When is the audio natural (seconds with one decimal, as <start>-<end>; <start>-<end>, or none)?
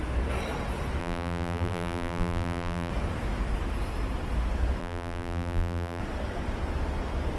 0.0-1.0; 2.9-4.8; 6.0-7.4